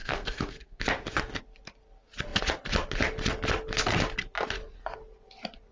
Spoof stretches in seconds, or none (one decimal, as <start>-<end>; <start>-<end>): 0.0-0.8